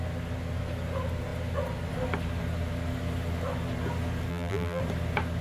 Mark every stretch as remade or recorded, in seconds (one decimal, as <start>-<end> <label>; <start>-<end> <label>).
0.0-4.3 recorded; 4.3-4.8 remade; 4.8-5.4 recorded